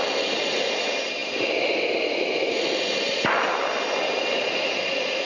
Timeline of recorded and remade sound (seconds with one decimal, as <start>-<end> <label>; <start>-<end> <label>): 0.0-5.2 recorded